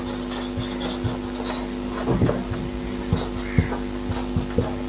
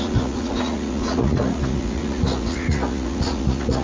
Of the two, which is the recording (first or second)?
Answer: first